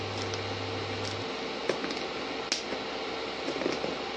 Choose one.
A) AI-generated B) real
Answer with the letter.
B